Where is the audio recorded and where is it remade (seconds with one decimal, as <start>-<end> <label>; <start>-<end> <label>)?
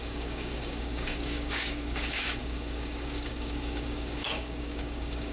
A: 0.0-5.3 remade